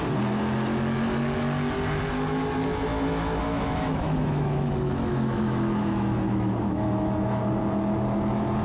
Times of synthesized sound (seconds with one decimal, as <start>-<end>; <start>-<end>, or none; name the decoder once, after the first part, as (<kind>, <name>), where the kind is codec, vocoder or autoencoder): 2.9-7.4 (autoencoder, DAC-VAE)